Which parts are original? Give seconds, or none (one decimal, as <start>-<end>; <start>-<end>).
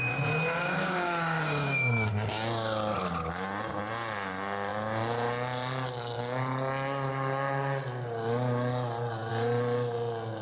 0.0-0.6; 2.1-10.4